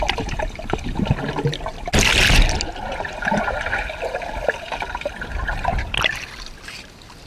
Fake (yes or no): no